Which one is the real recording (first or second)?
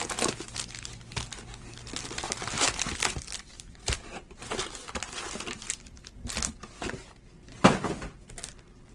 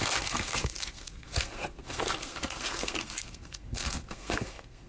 first